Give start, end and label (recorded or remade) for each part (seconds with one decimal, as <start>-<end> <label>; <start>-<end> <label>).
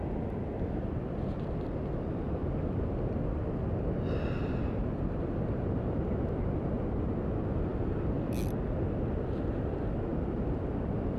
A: 0.0-11.2 recorded